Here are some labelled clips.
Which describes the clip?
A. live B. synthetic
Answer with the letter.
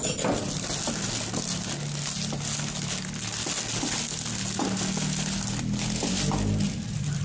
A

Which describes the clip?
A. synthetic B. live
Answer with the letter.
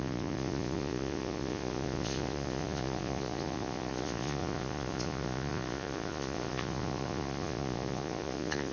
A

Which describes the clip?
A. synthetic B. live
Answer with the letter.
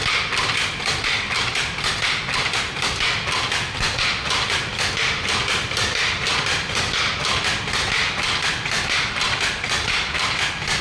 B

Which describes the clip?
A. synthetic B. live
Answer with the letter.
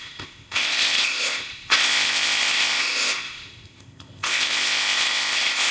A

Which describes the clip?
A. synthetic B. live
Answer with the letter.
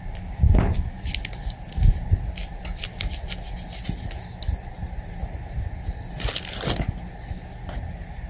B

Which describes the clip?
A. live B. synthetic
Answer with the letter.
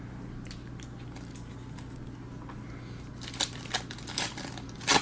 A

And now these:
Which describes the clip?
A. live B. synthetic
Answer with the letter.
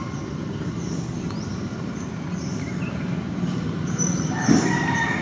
A